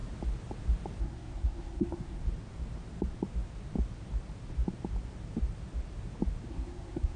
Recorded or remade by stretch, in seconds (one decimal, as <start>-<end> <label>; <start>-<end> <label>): 0.0-1.0 recorded; 1.0-2.2 remade; 2.2-6.5 recorded; 6.5-7.2 remade

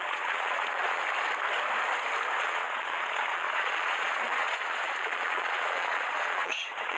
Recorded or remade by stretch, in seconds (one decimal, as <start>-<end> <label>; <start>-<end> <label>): 0.0-1.0 remade; 1.0-2.4 recorded; 2.4-7.0 remade

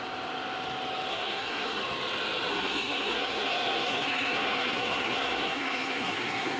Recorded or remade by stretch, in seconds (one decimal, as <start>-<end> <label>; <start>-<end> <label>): 0.0-1.1 recorded; 1.1-1.8 remade; 1.8-2.5 recorded; 2.5-6.6 remade

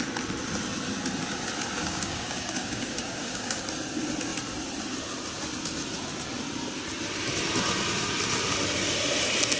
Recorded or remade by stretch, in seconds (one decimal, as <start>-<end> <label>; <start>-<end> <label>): 0.0-1.8 recorded; 1.8-3.6 remade; 3.6-9.6 recorded

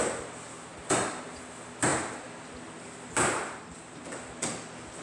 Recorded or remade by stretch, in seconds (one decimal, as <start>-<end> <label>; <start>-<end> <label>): 0.0-5.0 recorded

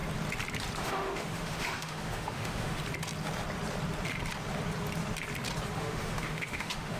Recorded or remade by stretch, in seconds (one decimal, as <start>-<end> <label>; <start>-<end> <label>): 0.0-0.8 recorded; 0.8-2.8 remade; 2.8-5.8 recorded; 5.8-7.0 remade

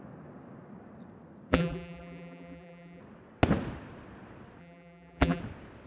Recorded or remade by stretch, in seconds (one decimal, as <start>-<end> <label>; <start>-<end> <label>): 0.0-1.5 recorded; 1.5-3.0 remade; 3.0-4.6 recorded; 4.6-5.4 remade; 5.4-5.9 recorded

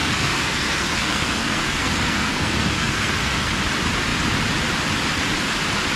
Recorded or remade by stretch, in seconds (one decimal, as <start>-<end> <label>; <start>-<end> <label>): 0.0-3.6 remade; 3.6-6.0 recorded